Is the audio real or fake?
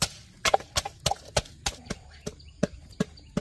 real